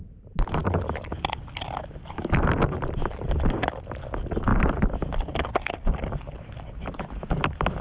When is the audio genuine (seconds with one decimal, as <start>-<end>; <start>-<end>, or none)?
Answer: 0.0-7.8